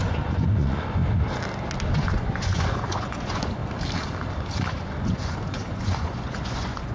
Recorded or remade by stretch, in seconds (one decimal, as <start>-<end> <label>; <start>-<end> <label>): 0.0-1.0 remade; 1.0-1.9 recorded; 1.9-3.6 remade; 3.6-4.7 recorded; 4.7-6.9 remade